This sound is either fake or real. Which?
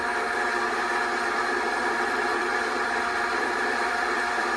fake